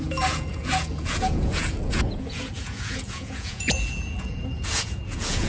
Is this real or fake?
fake